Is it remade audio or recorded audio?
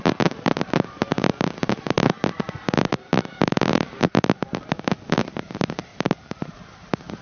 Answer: remade